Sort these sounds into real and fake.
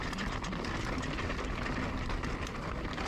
real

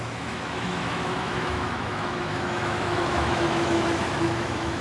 fake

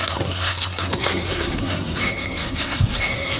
fake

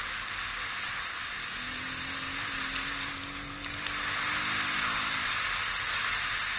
real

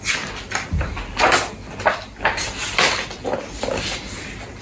real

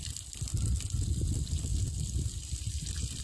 real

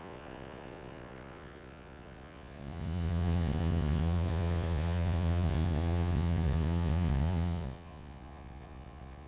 fake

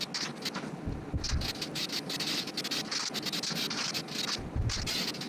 real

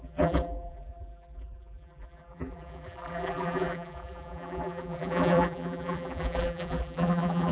fake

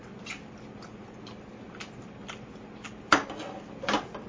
real